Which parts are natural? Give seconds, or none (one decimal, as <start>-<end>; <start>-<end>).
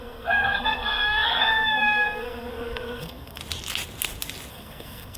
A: 3.4-4.5